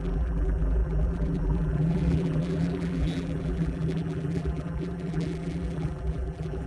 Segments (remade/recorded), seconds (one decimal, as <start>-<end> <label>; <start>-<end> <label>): 0.0-6.7 remade